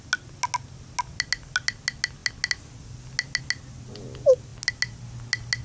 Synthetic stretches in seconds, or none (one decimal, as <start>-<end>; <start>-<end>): none